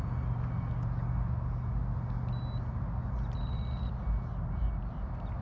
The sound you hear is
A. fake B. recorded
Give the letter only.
B